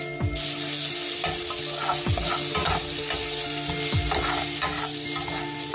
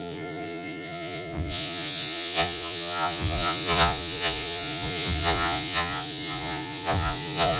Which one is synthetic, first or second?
second